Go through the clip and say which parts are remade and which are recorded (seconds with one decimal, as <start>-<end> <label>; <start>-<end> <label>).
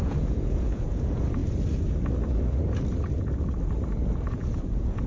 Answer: 0.0-1.4 remade; 1.4-4.3 recorded; 4.3-5.1 remade